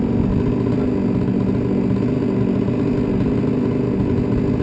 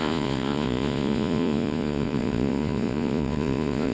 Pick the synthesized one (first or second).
second